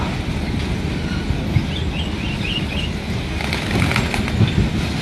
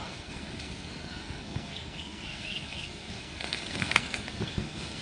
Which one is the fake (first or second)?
second